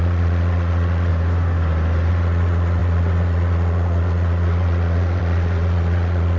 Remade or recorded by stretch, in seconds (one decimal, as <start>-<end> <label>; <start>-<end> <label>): 0.0-1.1 remade; 1.1-2.1 recorded; 2.1-6.4 remade